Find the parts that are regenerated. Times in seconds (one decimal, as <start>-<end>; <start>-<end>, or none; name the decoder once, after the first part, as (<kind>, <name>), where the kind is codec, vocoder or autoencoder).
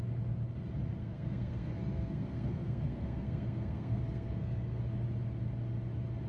1.0-4.8 (codec, SNAC)